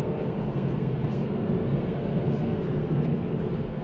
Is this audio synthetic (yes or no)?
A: yes